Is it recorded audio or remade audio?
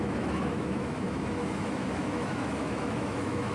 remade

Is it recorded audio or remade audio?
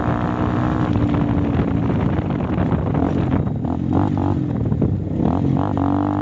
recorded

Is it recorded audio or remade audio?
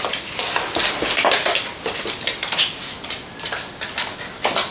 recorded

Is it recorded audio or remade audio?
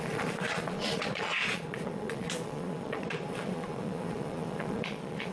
remade